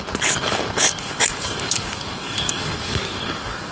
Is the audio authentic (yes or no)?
no